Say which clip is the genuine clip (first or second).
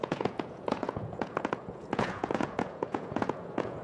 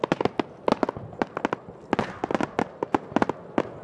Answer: second